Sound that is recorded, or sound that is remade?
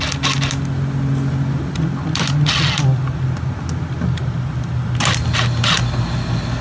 recorded